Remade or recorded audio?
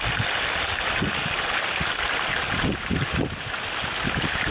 recorded